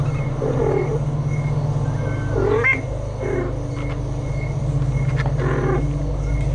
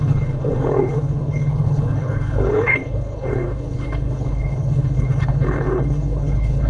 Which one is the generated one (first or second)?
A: second